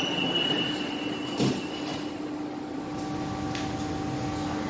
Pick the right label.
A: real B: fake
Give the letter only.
A